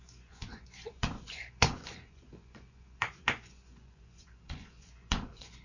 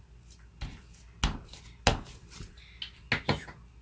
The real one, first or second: second